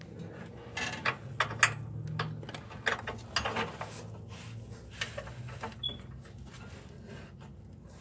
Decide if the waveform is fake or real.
real